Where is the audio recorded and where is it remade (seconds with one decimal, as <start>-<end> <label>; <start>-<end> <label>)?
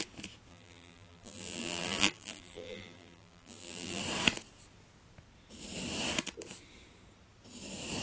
0.0-0.5 recorded; 0.5-4.0 remade; 4.0-8.0 recorded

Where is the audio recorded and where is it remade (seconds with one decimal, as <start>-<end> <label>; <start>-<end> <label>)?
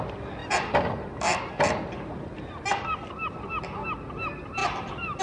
0.0-0.4 recorded; 0.4-3.5 remade; 3.5-4.6 recorded; 4.6-5.2 remade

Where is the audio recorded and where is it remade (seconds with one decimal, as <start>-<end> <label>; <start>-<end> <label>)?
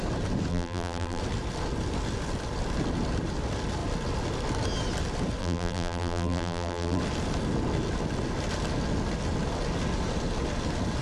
0.0-0.5 recorded; 0.5-1.2 remade; 1.2-5.4 recorded; 5.4-7.0 remade; 7.0-11.0 recorded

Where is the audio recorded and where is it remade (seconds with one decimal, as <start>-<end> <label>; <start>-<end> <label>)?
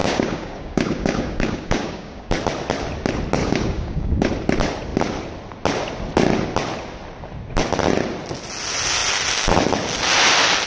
0.0-2.3 remade; 2.3-3.4 recorded; 3.4-4.3 remade; 4.3-10.7 recorded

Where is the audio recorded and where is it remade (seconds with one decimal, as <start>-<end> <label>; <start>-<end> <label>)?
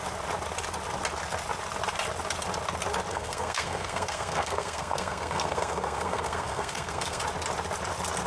0.0-3.1 recorded; 3.1-7.2 remade; 7.2-8.3 recorded